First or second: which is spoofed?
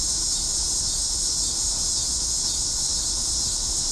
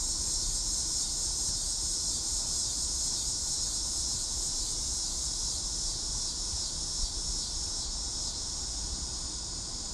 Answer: second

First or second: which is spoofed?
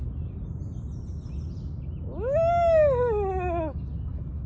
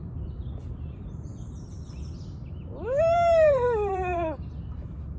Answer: second